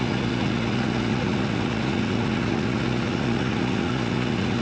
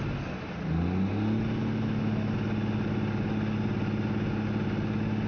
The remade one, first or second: first